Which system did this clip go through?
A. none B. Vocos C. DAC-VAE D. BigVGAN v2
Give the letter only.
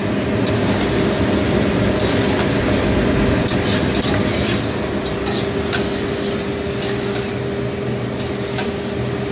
A